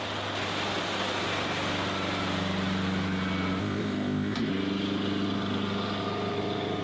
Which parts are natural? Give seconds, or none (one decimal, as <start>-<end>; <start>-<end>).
0.0-3.6; 4.5-6.8

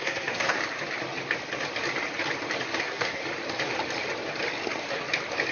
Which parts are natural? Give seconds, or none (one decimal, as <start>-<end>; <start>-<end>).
0.6-2.8; 3.2-5.5

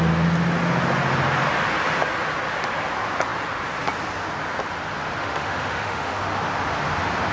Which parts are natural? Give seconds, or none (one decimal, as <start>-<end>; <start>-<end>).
0.0-5.2; 6.2-7.3

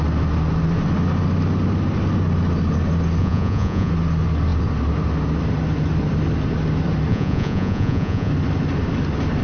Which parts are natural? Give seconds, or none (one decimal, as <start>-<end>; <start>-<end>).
0.0-3.2; 3.9-7.1; 8.3-9.4

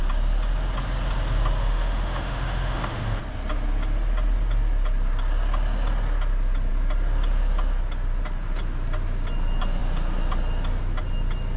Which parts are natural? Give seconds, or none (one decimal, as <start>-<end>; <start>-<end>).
0.0-1.6; 3.2-11.6